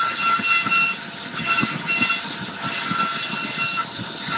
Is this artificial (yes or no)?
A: no